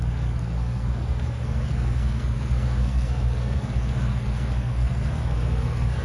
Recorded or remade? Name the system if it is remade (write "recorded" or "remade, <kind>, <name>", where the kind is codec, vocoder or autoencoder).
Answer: remade, codec, SNAC